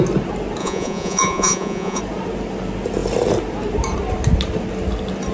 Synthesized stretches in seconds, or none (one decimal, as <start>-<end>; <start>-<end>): 0.6-2.0